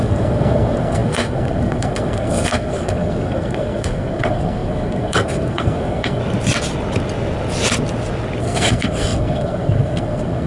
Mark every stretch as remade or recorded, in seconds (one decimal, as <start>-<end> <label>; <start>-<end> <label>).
0.0-6.2 remade; 6.2-8.4 recorded; 8.4-10.5 remade